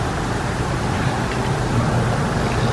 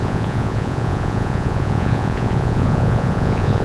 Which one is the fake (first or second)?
second